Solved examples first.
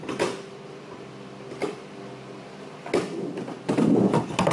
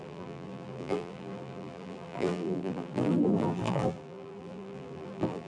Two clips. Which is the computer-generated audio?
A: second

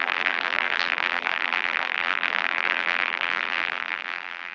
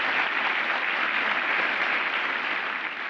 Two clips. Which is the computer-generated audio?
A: first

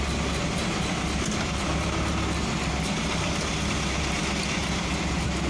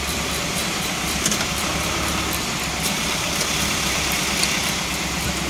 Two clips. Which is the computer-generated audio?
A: second